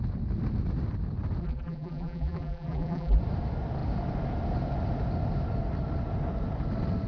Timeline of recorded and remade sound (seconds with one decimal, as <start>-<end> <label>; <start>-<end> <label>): 0.0-1.4 recorded; 1.4-3.2 remade; 3.2-7.1 recorded